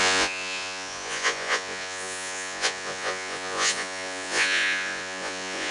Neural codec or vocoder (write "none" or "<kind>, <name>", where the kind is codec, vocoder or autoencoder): vocoder, Vocos